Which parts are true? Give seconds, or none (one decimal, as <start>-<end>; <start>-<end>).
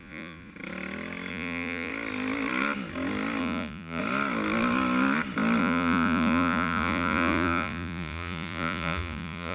0.5-1.3; 1.9-3.4; 4.0-5.6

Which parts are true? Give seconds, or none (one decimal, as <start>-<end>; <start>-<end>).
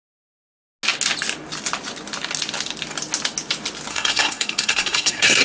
0.0-3.9